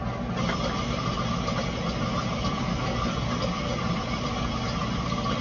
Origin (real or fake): real